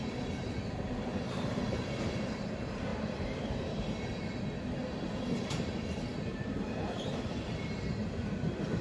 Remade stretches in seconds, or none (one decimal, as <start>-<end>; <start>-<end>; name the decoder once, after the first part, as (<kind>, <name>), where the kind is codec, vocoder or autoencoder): 1.1-2.4 (vocoder, BigVGAN v2); 2.9-7.6

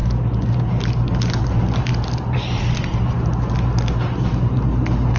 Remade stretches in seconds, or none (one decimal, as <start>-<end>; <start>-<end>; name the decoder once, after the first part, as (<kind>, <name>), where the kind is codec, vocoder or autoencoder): 1.9-2.6 (vocoder, BigVGAN v2)

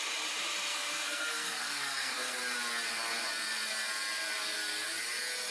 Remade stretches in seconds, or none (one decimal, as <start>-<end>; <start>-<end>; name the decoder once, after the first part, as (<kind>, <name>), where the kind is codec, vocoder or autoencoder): 0.7-2.4 (codec, SNAC)

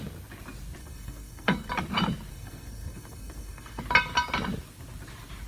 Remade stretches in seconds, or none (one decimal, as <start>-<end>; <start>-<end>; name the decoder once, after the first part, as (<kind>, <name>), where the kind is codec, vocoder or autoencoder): 0.8-1.7 (codec, SNAC); 2.3-3.8